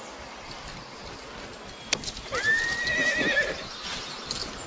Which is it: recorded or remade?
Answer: recorded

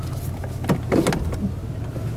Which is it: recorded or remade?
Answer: recorded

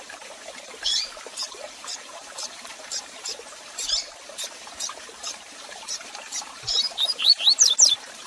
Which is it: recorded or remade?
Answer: remade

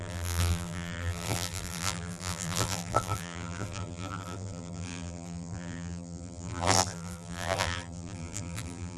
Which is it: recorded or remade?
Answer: remade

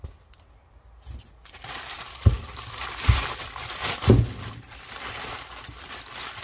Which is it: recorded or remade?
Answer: remade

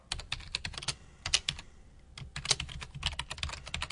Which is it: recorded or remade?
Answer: recorded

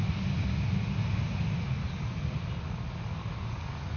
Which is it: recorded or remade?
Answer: recorded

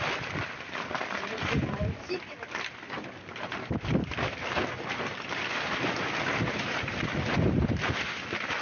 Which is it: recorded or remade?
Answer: remade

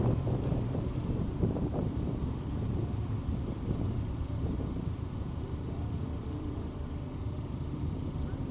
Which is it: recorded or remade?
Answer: remade